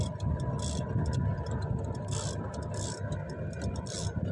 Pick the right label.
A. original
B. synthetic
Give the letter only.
A